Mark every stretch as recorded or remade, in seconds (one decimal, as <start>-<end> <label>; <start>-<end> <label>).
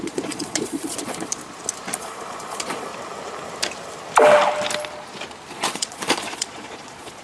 0.0-1.4 remade; 1.4-2.0 recorded; 2.0-2.9 remade; 2.9-5.5 recorded; 5.5-7.2 remade